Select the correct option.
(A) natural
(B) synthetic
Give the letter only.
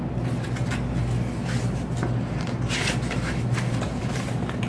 A